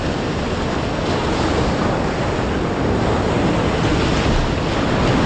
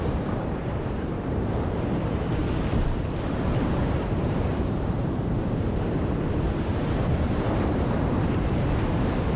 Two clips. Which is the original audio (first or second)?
first